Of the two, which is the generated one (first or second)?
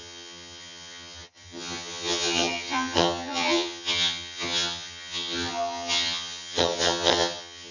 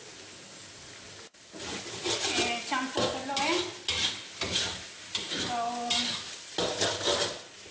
first